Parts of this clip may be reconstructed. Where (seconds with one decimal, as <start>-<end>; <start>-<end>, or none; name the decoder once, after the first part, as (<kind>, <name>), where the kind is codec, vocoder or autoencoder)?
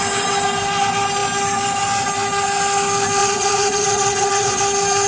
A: 3.2-4.6 (vocoder, Vocos)